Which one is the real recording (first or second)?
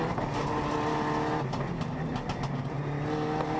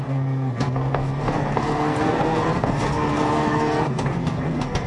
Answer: first